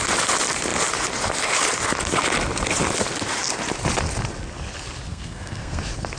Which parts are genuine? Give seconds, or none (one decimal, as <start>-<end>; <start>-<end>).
0.0-5.1; 5.8-6.2